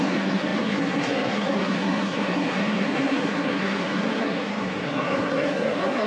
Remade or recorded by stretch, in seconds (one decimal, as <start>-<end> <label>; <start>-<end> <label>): 0.0-6.1 remade